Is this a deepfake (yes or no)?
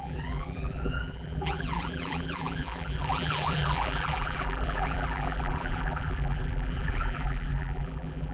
yes